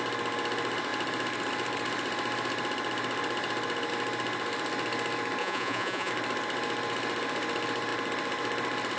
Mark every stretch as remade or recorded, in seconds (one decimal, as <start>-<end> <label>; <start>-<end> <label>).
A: 0.0-5.4 recorded; 5.4-6.1 remade; 6.1-9.0 recorded